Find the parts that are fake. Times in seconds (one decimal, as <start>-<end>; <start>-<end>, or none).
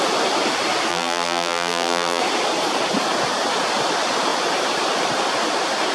0.9-2.2